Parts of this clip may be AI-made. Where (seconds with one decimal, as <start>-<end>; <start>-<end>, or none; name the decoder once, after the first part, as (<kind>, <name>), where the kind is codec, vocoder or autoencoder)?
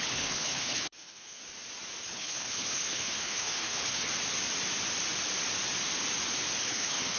0.0-1.4 (codec, HILCodec); 2.0-4.1; 6.6-7.2